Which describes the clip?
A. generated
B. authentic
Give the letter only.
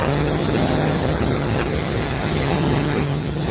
A